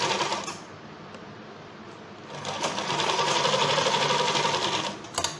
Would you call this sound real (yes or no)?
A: yes